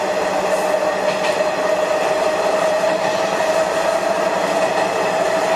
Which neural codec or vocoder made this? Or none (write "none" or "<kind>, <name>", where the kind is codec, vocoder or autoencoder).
none